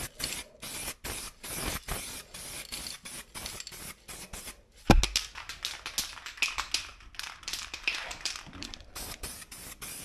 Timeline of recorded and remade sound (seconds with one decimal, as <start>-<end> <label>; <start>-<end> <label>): 0.0-6.9 recorded; 6.9-9.3 remade; 9.3-10.0 recorded